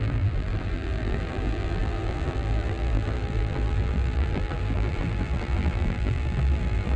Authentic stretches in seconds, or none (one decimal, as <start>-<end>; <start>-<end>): none